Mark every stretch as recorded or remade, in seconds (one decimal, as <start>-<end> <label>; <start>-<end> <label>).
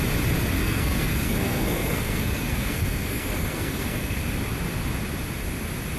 0.0-0.6 recorded; 0.6-4.2 remade; 4.2-6.0 recorded